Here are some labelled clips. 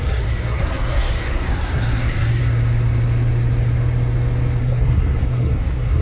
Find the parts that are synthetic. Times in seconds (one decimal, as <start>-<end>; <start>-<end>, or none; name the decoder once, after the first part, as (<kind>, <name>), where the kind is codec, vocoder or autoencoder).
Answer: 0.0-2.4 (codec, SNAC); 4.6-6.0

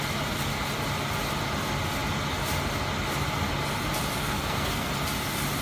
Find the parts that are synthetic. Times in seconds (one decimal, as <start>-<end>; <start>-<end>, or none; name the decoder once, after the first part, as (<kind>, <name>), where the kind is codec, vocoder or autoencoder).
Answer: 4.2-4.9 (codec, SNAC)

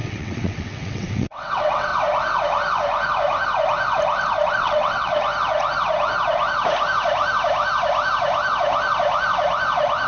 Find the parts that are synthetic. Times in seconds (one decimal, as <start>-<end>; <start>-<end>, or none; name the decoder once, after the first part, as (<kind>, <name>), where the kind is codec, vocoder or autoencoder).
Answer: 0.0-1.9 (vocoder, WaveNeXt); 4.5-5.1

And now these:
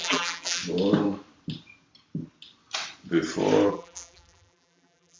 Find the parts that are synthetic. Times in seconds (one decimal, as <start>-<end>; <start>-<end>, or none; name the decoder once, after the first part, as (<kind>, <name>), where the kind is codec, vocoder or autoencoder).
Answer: 0.0-0.6 (vocoder, BigVGAN v2); 3.7-5.2

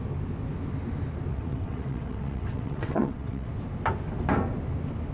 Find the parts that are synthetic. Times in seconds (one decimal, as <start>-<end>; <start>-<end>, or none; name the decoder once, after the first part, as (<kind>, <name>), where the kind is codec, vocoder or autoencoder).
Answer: 1.3-3.5 (vocoder, WaveNeXt)

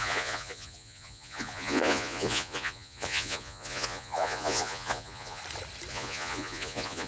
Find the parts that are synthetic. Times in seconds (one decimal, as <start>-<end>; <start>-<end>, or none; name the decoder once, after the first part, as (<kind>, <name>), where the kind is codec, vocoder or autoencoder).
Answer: 0.0-5.4 (vocoder, Vocos); 5.9-7.1

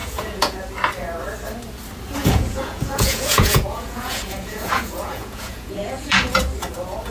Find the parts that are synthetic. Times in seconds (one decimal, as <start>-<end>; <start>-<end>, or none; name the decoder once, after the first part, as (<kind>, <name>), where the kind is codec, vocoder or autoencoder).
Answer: 0.0-0.6 (vocoder, Vocos); 2.2-6.4

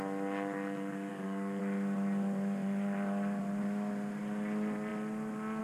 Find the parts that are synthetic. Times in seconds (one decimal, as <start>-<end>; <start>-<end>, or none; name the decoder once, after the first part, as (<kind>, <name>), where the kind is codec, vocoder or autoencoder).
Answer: 1.1-1.6 (codec, DAC)